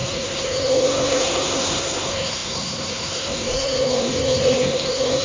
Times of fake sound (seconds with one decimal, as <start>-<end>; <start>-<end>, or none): 0.0-5.2